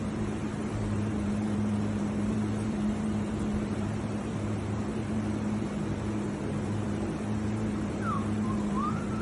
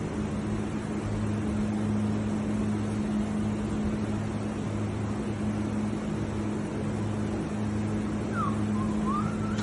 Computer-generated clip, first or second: first